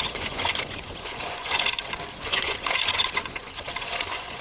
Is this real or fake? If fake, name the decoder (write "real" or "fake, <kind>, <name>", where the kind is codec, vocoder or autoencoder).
fake, vocoder, Vocos